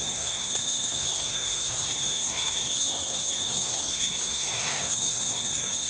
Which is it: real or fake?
fake